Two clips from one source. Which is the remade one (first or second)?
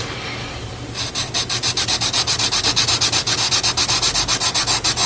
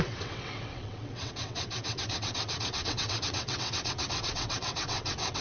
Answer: second